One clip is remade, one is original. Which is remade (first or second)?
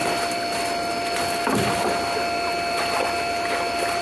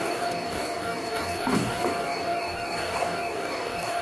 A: second